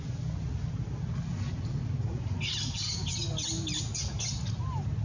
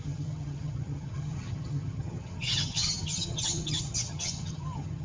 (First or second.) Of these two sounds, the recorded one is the first